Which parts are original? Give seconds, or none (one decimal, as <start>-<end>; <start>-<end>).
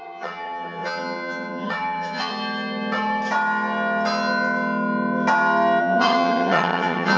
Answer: 2.3-5.8